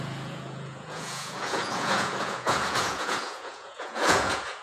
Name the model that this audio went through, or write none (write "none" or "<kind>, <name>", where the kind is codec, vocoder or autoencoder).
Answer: vocoder, Vocos